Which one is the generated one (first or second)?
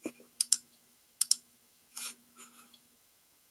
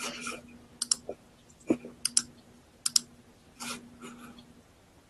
first